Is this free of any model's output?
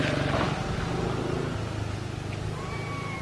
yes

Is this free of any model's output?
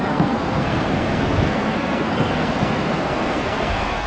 no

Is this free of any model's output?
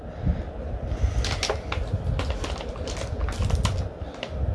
yes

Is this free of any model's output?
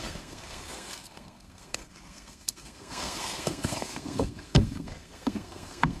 no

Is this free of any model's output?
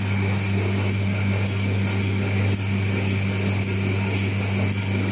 yes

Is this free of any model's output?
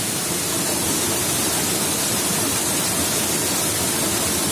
yes